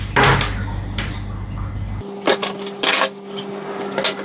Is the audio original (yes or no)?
yes